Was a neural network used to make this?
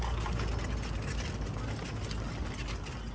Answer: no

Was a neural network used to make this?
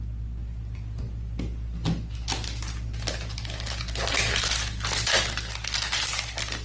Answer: no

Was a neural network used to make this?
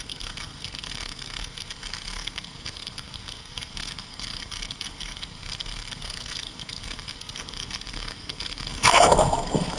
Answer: yes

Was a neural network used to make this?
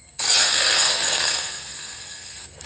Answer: yes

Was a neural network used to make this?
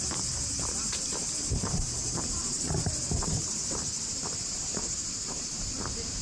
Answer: yes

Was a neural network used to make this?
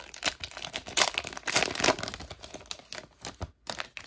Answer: no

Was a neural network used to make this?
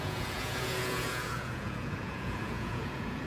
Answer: yes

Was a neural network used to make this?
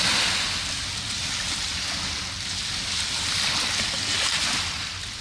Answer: no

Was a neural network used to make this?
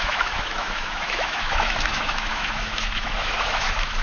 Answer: yes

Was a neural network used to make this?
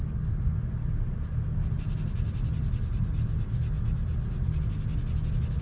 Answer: no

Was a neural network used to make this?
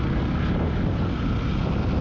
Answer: no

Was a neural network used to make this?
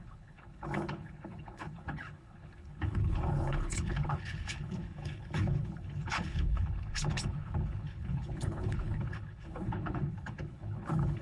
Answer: yes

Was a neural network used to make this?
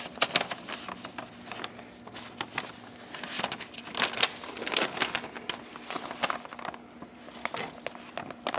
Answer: no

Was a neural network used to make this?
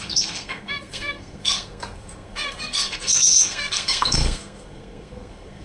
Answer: yes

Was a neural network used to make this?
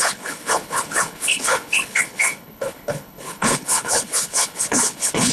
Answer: yes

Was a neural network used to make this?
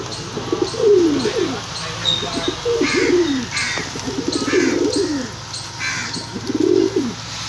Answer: no